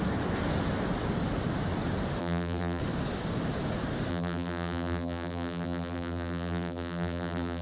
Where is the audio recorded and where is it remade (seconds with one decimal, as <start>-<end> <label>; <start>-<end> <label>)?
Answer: 0.0-2.2 recorded; 2.2-2.8 remade; 2.8-4.1 recorded; 4.1-7.6 remade